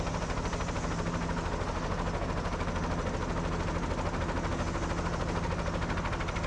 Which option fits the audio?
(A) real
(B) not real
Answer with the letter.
A